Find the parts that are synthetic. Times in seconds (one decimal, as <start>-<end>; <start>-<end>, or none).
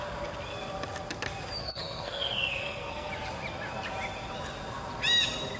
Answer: 1.6-3.1